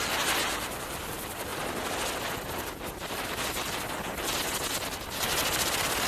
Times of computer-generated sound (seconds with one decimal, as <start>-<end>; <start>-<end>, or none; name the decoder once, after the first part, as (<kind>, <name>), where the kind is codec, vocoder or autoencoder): none